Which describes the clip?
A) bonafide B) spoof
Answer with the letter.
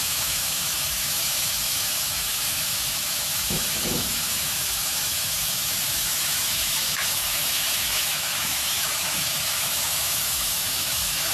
B